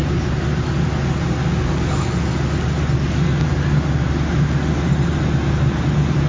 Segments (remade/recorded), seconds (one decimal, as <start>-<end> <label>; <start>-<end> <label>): 0.0-6.3 recorded